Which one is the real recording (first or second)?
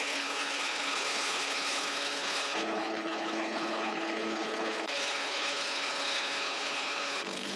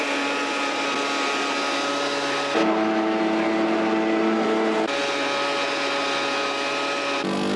second